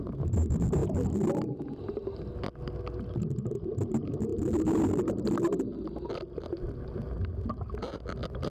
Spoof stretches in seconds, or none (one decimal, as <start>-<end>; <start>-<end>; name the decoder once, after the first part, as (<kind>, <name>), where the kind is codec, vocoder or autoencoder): none